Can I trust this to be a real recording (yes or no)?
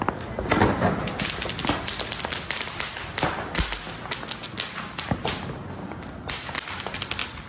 yes